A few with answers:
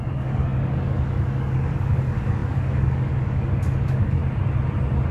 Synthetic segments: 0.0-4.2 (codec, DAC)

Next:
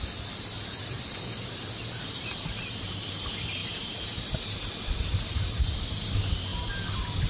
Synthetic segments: none

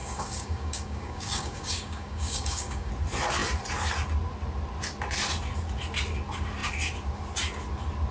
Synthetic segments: 0.0-2.9 (codec, DAC)

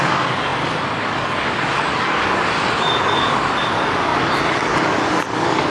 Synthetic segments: 0.0-5.7 (codec, DAC)

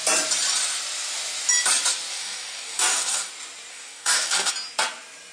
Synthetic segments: 2.1-3.3 (codec, DAC); 3.7-4.5